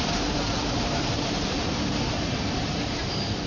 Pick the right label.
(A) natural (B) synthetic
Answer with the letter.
B